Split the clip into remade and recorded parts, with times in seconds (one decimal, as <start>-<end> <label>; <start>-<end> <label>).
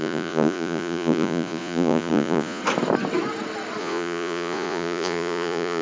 0.0-2.6 remade; 2.6-3.8 recorded; 3.8-5.8 remade